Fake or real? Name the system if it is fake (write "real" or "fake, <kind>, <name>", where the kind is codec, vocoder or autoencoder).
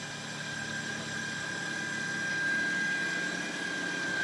real